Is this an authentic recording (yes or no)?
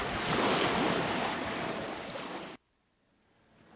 yes